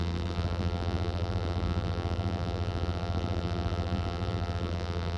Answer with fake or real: fake